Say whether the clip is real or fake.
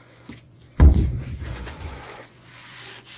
fake